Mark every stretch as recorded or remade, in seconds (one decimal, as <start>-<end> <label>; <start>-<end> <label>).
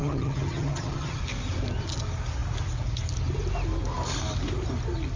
0.0-1.2 remade; 1.2-5.2 recorded